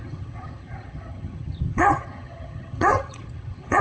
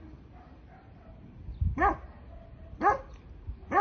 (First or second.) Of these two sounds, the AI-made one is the first